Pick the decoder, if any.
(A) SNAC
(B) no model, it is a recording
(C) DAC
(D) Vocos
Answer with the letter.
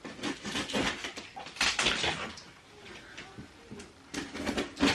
B